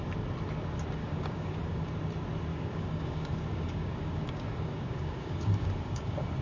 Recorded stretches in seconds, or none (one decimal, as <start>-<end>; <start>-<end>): 0.0-1.0; 1.9-2.5